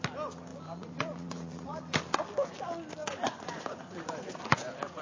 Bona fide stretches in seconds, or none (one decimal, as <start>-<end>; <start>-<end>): 0.0-0.5; 2.0-3.0; 4.3-5.0